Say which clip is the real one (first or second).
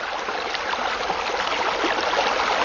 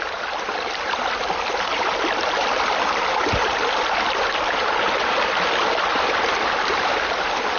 first